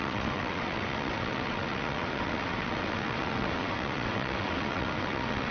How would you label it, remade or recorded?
remade